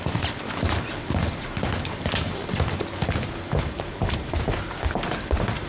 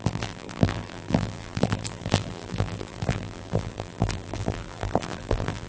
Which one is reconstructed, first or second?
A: second